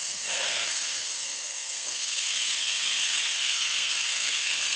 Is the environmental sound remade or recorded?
remade